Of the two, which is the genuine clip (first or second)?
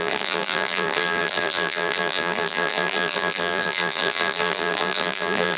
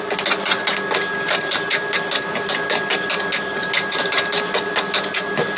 second